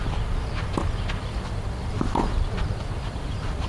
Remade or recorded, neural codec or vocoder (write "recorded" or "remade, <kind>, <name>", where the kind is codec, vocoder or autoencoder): remade, vocoder, BigVGAN v2